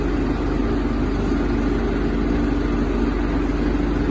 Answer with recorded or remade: recorded